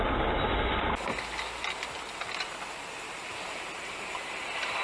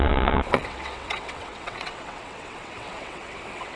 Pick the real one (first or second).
first